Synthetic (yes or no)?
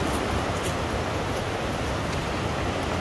no